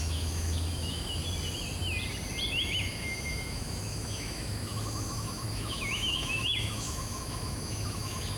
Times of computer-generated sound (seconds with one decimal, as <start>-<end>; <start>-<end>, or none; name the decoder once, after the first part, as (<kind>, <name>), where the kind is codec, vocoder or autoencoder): 0.0-1.2 (autoencoder, DAC-VAE); 2.5-8.4